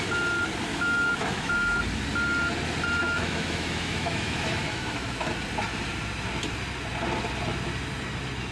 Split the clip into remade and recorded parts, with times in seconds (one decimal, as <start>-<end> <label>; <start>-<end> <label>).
0.0-0.7 recorded; 0.7-1.8 remade; 1.8-3.0 recorded; 3.0-5.3 remade; 5.3-8.5 recorded